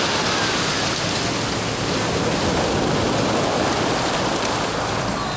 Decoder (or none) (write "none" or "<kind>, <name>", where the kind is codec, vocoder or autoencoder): none